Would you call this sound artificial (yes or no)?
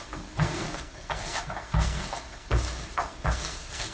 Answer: yes